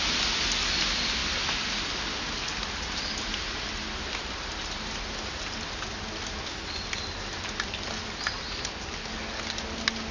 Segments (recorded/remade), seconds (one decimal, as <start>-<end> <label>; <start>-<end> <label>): 0.0-10.1 recorded